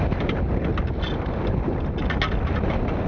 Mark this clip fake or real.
real